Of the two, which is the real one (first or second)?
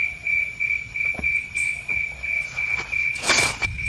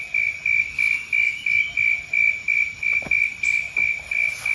second